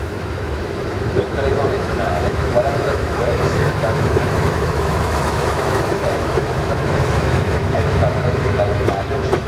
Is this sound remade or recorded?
remade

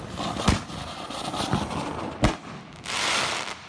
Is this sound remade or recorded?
recorded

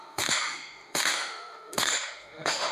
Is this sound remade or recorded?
remade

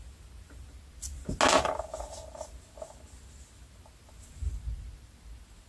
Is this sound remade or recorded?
recorded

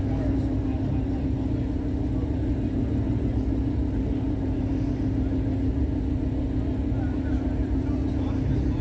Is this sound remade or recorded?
recorded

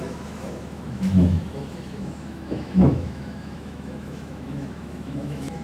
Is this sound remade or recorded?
remade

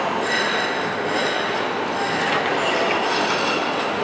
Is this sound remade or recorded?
recorded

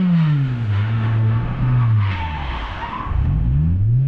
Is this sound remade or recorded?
remade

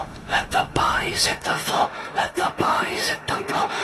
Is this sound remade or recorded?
remade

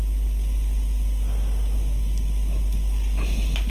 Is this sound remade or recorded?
recorded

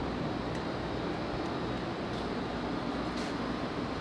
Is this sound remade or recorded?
recorded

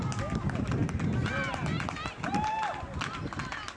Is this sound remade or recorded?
recorded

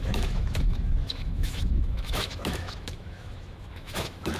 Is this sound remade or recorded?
remade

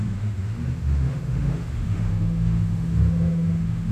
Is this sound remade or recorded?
remade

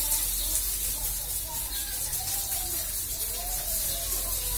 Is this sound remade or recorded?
recorded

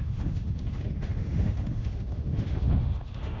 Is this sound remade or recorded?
remade